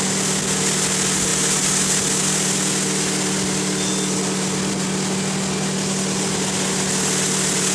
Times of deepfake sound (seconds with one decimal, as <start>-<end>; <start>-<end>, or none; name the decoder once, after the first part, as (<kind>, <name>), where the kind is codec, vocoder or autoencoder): none